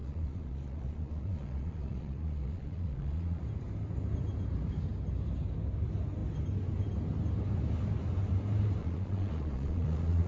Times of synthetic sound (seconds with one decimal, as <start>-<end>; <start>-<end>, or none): 0.0-3.4; 8.8-10.3